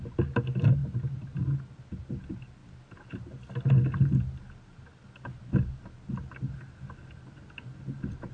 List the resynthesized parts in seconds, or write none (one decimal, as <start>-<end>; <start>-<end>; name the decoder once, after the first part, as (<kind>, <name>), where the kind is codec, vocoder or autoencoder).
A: none